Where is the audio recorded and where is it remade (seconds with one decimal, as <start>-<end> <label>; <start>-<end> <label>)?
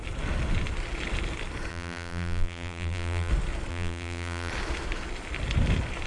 0.0-1.7 recorded; 1.7-3.3 remade; 3.3-3.7 recorded; 3.7-4.5 remade; 4.5-6.1 recorded